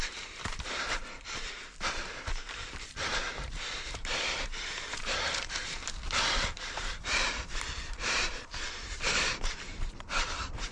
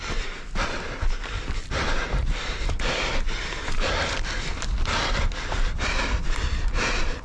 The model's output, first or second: first